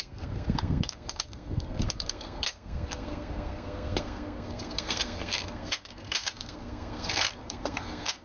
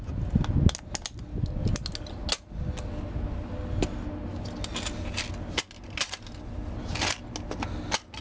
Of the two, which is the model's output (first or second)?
first